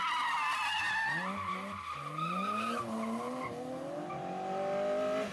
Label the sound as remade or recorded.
recorded